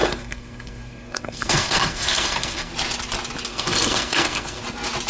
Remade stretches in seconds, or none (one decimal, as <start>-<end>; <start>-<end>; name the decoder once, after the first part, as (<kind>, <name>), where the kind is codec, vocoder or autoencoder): 0.0-2.7 (codec, SNAC); 3.5-4.6